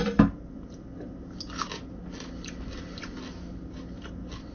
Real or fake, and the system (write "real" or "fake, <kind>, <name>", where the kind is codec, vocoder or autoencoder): real